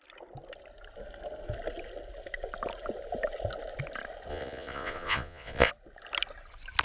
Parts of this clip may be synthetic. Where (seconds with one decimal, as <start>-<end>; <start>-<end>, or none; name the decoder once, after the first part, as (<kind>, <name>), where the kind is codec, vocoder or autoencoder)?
4.3-5.7 (vocoder, Vocos)